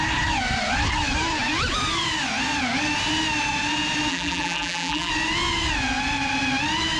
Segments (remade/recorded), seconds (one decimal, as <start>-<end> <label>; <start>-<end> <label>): 0.0-4.1 recorded; 4.1-5.1 remade; 5.1-7.0 recorded